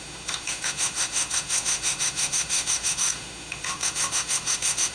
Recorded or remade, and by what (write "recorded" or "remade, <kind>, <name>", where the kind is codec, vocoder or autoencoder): remade, autoencoder, DAC-VAE